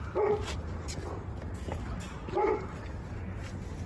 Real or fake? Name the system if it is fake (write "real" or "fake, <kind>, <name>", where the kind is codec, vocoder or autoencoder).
real